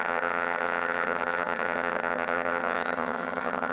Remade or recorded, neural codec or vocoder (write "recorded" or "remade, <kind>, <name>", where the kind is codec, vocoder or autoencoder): remade, vocoder, HiFi-GAN